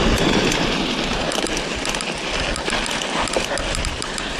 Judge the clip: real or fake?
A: real